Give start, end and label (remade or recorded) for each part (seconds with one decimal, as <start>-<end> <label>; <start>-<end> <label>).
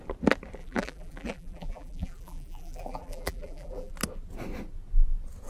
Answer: 0.0-0.6 recorded; 0.6-3.9 remade; 3.9-5.5 recorded